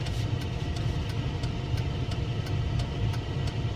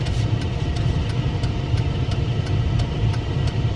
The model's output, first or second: second